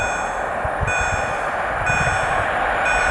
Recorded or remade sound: recorded